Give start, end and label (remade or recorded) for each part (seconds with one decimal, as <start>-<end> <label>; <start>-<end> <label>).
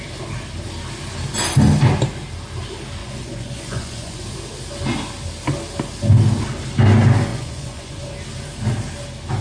0.0-3.0 recorded; 3.0-4.2 remade; 4.2-7.3 recorded; 7.3-8.0 remade; 8.0-9.4 recorded